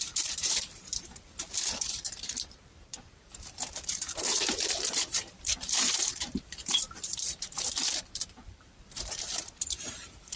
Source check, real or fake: fake